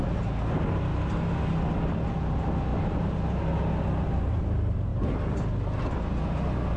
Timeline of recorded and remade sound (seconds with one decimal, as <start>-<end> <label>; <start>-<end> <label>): 0.0-6.8 recorded